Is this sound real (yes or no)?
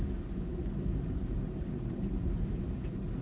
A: yes